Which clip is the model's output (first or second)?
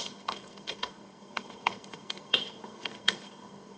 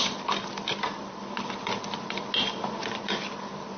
first